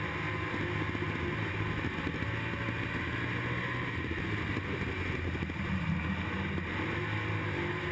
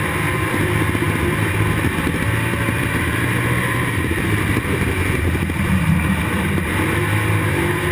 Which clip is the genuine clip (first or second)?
first